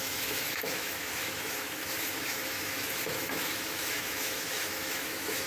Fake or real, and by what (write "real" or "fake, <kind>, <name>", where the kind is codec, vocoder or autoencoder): fake, autoencoder, DAC-VAE